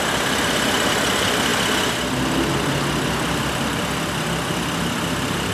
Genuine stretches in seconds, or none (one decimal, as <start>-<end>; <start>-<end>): 0.0-5.5